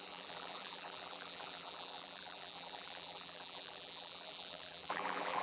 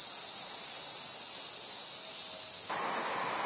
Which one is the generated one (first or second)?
first